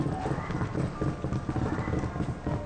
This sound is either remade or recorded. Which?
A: recorded